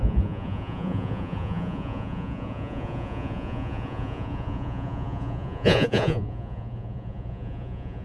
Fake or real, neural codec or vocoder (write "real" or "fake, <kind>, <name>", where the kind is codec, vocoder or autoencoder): fake, vocoder, Vocos